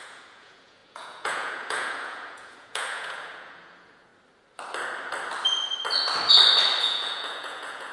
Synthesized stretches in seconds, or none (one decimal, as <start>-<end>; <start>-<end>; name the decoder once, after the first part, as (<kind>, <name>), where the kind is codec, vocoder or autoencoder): 0.0-4.1 (vocoder, Vocos); 6.8-7.9